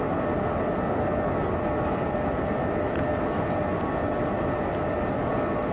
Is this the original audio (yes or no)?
yes